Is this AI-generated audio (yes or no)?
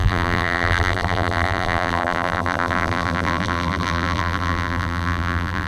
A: yes